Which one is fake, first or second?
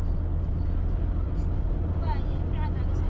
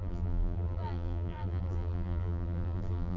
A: second